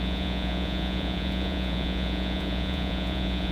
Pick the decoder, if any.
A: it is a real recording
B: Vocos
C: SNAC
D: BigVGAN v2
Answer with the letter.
B